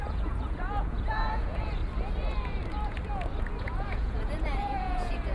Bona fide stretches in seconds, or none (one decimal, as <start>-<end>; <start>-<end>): 1.8-3.6